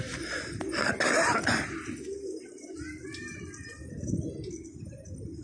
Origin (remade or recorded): recorded